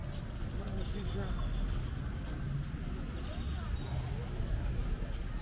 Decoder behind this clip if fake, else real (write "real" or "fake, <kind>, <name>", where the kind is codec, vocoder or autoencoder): real